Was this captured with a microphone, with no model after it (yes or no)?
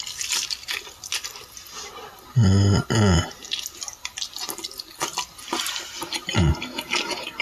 yes